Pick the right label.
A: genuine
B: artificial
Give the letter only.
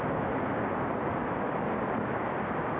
A